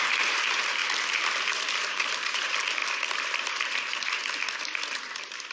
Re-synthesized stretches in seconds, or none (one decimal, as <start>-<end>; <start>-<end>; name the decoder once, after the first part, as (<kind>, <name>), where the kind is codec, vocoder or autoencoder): 0.0-0.8 (vocoder, BigVGAN v2); 1.8-2.8; 3.5-4.2; 5.1-5.5